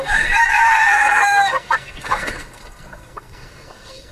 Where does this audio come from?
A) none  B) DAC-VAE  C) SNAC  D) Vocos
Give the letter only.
C